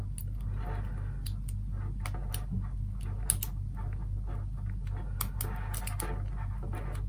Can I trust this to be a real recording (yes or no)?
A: yes